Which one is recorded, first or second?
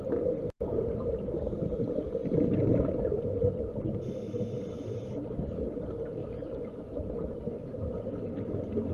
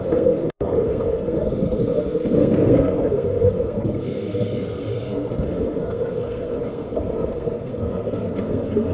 first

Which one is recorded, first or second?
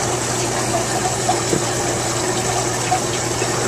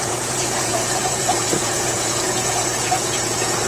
first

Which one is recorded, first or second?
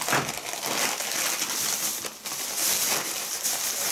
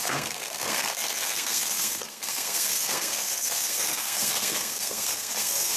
first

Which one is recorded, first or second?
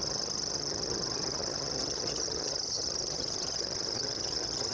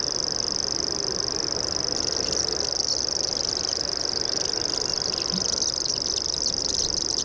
second